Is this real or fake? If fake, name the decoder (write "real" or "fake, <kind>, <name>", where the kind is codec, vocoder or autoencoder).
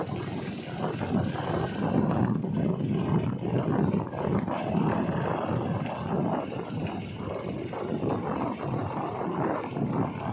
real